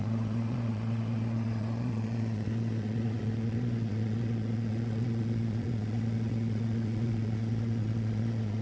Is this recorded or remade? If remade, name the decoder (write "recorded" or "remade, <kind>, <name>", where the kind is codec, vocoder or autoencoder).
remade, vocoder, Vocos